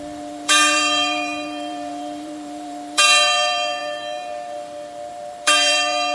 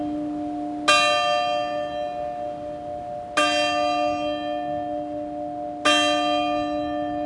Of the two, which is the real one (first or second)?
second